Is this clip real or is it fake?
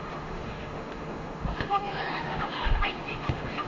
fake